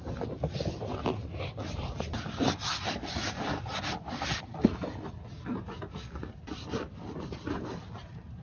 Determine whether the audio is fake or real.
real